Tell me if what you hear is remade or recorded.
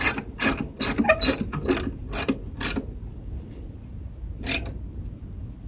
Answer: recorded